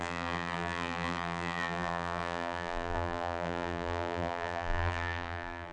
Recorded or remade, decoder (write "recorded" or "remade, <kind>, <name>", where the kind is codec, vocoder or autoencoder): remade, vocoder, BigVGAN v2